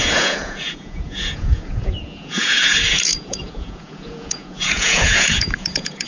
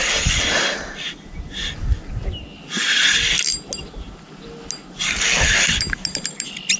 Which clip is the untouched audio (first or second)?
second